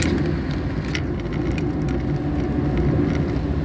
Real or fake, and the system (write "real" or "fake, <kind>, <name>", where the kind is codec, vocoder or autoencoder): real